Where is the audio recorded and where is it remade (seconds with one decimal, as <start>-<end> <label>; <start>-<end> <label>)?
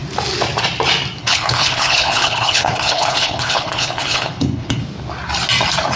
0.0-1.2 recorded; 1.2-4.8 remade; 4.8-6.0 recorded